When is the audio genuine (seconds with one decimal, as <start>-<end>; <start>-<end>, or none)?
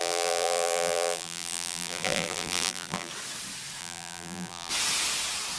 3.1-3.8; 4.7-5.6